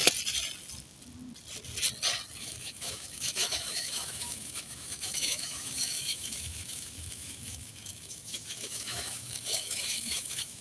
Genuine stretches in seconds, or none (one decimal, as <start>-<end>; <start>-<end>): 0.0-2.4